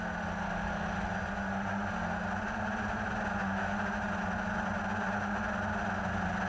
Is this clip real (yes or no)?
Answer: yes